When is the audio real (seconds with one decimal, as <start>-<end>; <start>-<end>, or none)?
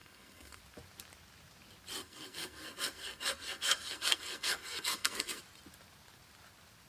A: 0.6-2.0; 5.4-6.9